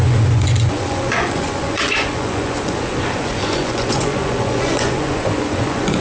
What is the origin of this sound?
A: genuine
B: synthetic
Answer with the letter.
B